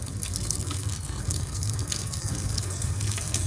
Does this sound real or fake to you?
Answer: fake